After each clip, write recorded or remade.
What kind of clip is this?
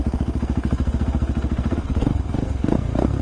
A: remade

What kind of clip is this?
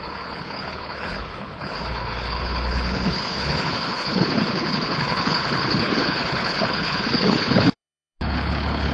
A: remade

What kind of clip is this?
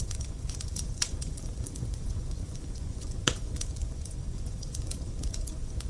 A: remade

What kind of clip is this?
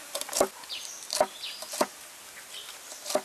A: recorded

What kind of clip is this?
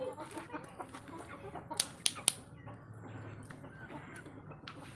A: recorded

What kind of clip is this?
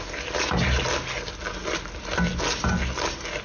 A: recorded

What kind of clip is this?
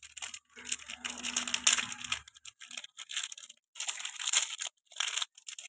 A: recorded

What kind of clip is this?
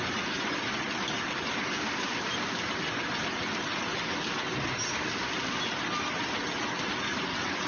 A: recorded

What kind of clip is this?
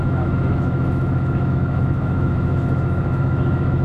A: remade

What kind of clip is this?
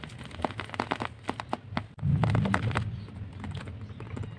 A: recorded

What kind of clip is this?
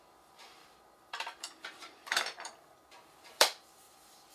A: remade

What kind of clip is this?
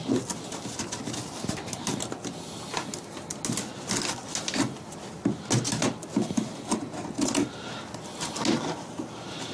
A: recorded